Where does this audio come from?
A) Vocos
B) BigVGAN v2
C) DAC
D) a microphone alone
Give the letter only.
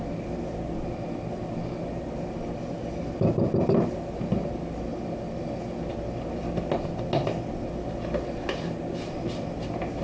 D